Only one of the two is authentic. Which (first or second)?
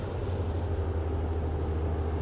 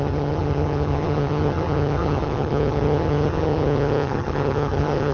first